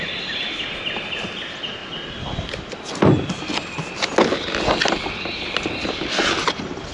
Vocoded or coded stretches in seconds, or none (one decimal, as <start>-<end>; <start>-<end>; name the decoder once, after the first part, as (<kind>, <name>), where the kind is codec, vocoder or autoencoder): none